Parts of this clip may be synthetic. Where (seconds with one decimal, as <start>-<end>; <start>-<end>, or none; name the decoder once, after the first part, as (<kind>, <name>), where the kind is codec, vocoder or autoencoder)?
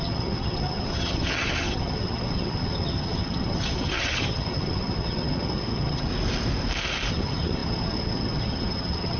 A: 0.0-6.1 (vocoder, HiFi-GAN); 7.1-9.2